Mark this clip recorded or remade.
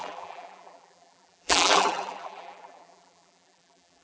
remade